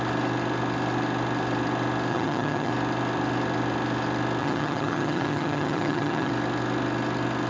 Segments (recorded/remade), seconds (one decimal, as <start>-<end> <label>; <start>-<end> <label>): 0.0-2.1 recorded; 2.1-2.7 remade; 2.7-4.4 recorded; 4.4-6.3 remade; 6.3-7.5 recorded